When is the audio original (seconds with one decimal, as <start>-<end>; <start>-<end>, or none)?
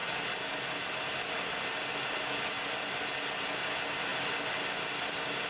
0.0-5.5